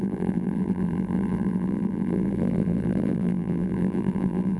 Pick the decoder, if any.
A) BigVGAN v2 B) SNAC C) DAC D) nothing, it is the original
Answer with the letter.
A